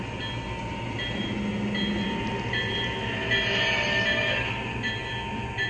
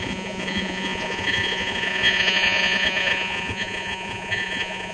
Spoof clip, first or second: second